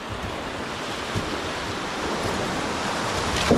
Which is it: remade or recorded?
recorded